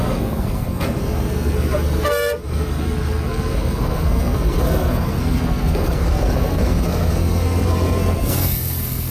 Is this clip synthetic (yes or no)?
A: yes